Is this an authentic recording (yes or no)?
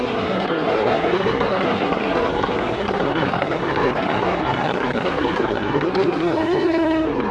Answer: no